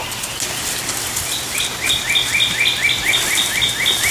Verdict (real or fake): real